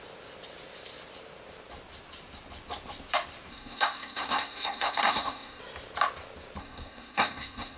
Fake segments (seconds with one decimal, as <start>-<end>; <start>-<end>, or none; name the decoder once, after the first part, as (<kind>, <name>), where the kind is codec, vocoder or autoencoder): 3.5-5.6 (codec, SNAC); 6.6-7.8